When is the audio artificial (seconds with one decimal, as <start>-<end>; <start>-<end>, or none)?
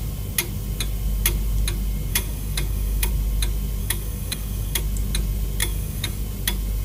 2.1-3.1; 3.8-4.8; 5.6-6.2